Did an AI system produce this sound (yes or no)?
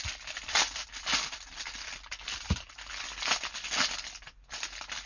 no